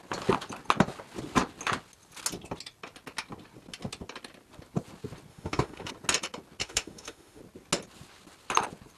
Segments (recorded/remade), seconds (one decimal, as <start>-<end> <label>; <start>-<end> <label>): 0.0-5.3 recorded; 5.3-5.9 remade; 5.9-6.6 recorded; 6.6-7.4 remade; 7.4-9.0 recorded